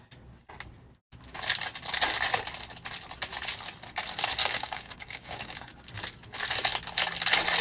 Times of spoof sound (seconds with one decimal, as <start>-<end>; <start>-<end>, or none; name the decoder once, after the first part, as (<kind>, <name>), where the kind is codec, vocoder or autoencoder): 4.4-5.9 (codec, DAC)